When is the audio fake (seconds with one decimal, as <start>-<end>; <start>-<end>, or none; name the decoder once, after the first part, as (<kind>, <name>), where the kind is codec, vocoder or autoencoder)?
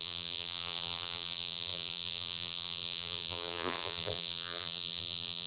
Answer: 0.0-5.5 (vocoder, BigVGAN v2)